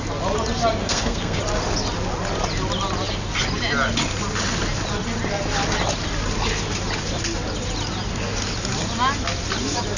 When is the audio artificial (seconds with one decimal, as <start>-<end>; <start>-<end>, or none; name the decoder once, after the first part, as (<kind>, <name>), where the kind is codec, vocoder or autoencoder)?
0.8-1.4 (codec, SNAC)